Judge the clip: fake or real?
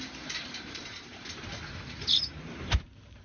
fake